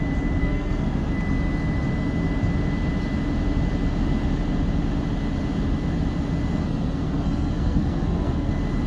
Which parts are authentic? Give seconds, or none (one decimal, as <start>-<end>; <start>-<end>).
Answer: 0.0-0.4; 1.1-6.6; 8.5-8.9

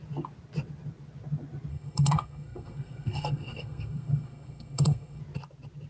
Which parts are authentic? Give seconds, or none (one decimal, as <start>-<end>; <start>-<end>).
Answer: 0.0-1.7; 5.2-5.9

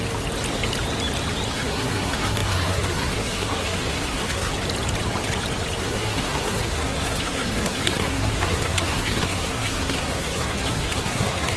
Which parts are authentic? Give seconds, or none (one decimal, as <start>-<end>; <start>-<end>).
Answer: 0.0-1.5; 4.5-5.8